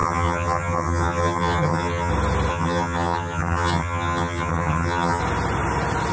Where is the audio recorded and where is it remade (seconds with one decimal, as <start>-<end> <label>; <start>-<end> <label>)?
0.0-2.1 remade; 2.1-2.5 recorded; 2.5-5.2 remade; 5.2-6.1 recorded